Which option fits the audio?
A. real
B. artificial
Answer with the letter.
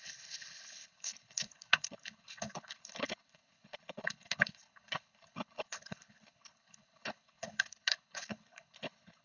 B